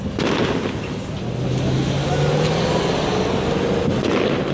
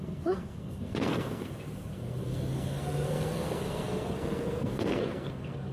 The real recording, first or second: first